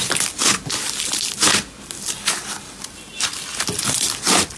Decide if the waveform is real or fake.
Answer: real